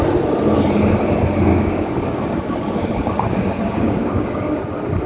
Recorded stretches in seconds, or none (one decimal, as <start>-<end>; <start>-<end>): 0.0-1.5; 4.6-5.1